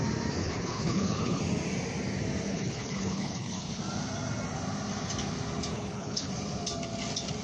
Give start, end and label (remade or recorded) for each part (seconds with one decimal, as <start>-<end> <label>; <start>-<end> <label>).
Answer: 0.0-0.4 recorded; 0.4-1.4 remade; 1.4-2.5 recorded; 2.5-3.8 remade; 3.8-5.7 recorded; 5.7-6.3 remade; 6.3-7.4 recorded